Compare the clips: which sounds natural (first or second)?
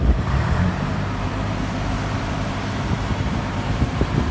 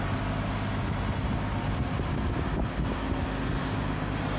second